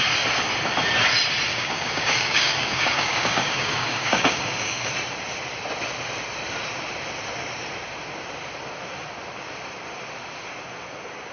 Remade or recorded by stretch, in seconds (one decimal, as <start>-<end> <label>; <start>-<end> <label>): 0.0-1.5 recorded; 1.5-4.9 remade; 4.9-11.3 recorded